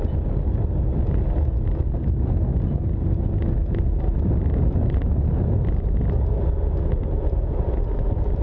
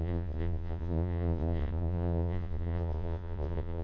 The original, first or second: first